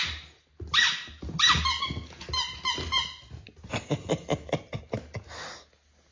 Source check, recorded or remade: recorded